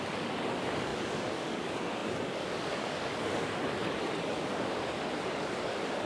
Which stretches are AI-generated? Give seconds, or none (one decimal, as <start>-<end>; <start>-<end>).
0.0-6.1